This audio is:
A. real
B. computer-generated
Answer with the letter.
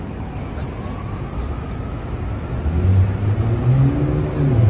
A